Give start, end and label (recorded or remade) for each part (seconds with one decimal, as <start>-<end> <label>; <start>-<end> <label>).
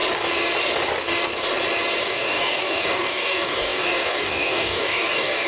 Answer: 0.0-2.0 recorded; 2.0-5.5 remade